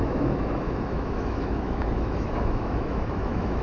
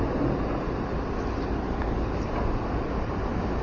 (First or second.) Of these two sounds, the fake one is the first